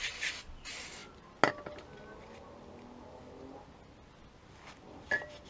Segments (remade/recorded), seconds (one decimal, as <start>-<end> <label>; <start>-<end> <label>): 0.0-5.5 recorded